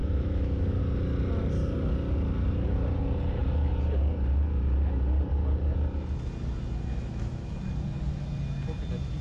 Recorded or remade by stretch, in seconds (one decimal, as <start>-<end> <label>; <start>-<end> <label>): 0.0-0.8 remade; 0.8-6.9 recorded; 6.9-7.5 remade; 7.5-9.2 recorded